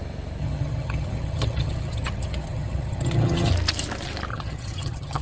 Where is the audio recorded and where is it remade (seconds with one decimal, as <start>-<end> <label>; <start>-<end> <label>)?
0.0-0.4 recorded; 0.4-3.5 remade; 3.5-4.3 recorded; 4.3-5.2 remade